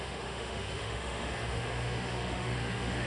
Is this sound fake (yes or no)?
yes